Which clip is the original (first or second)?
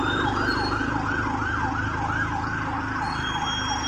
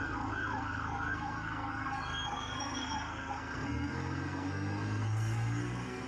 first